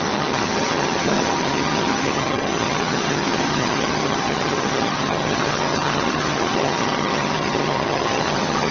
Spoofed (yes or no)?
yes